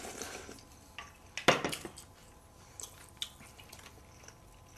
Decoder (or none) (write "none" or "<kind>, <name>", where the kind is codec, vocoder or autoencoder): none